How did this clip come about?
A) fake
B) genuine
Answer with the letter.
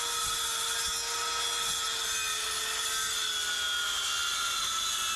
B